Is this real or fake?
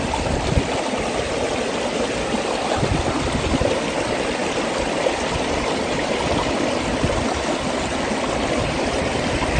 real